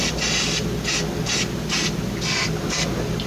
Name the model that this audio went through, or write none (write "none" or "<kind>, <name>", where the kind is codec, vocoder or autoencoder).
none